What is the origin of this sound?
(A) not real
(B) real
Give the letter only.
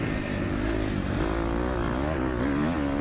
B